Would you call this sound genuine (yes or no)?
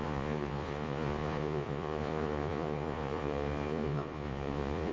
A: no